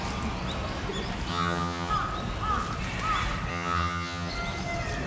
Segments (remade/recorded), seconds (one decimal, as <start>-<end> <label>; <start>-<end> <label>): 0.0-1.3 recorded; 1.3-1.9 remade; 1.9-3.5 recorded; 3.5-4.3 remade; 4.3-5.1 recorded

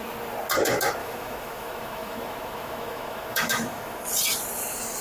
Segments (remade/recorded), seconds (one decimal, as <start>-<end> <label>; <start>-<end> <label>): 0.0-1.0 recorded; 1.0-4.0 remade; 4.0-5.0 recorded

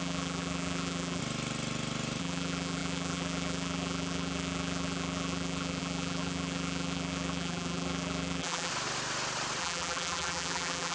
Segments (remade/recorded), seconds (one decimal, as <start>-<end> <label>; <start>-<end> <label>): 0.0-1.2 remade; 1.2-2.2 recorded; 2.2-8.7 remade; 8.7-9.6 recorded; 9.6-10.9 remade

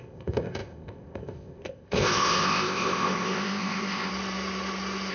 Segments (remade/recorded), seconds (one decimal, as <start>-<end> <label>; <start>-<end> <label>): 0.0-4.1 remade; 4.1-5.1 recorded

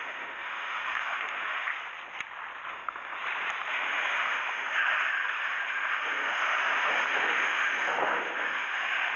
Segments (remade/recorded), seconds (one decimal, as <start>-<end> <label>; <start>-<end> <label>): 0.0-1.7 remade; 1.7-2.7 recorded; 2.7-3.2 remade; 3.2-3.7 recorded; 3.7-9.2 remade